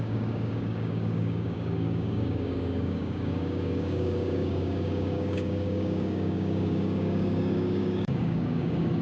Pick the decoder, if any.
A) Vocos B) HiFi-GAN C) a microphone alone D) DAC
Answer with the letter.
D